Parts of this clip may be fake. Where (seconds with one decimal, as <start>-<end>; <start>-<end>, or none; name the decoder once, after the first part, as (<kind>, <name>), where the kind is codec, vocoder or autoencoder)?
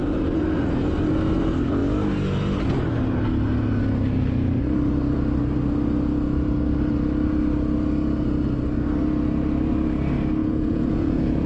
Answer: 10.4-11.5 (vocoder, Vocos)